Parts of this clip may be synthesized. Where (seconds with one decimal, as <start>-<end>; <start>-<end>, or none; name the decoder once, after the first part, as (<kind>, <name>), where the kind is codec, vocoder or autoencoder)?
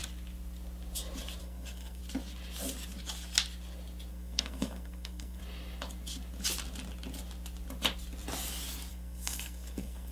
1.4-2.0 (codec, SNAC); 4.1-5.4; 8.9-10.1